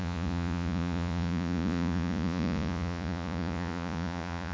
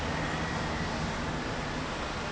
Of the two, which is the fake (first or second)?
first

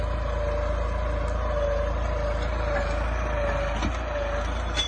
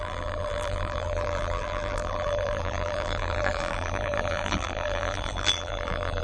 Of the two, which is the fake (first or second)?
second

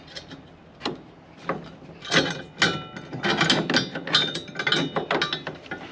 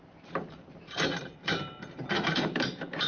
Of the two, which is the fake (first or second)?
second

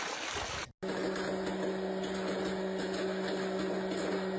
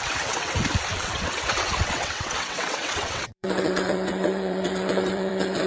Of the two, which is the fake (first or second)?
second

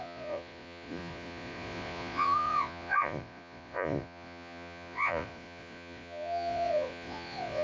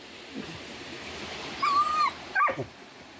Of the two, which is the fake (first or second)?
first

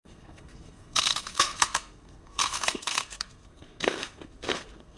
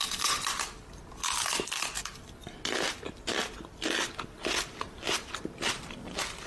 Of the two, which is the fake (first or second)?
first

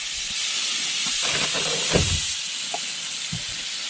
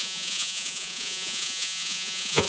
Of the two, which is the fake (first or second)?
second